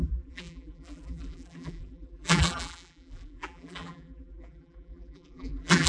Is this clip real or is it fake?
fake